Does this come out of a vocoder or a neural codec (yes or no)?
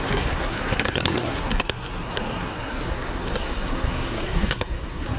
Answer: yes